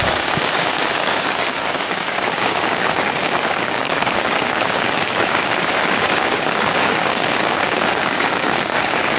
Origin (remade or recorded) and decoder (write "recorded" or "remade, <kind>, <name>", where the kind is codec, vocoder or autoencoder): remade, codec, DAC